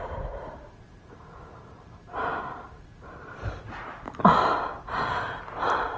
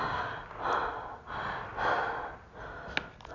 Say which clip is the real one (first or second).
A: second